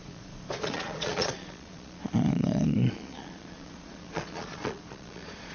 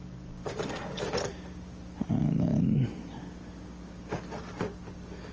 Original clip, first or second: second